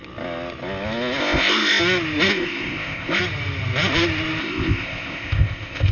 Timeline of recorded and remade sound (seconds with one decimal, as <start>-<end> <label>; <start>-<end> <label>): 0.0-1.2 recorded; 1.2-1.8 remade; 1.8-2.3 recorded; 2.3-3.2 remade; 3.2-4.4 recorded; 4.4-5.9 remade